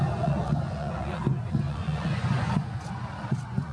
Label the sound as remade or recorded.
remade